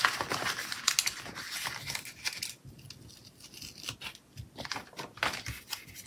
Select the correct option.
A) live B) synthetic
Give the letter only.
A